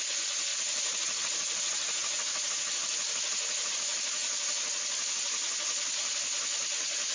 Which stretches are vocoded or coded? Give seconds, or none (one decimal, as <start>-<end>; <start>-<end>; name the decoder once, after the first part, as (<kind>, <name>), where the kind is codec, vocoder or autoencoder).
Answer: 0.5-3.7 (vocoder, Vocos)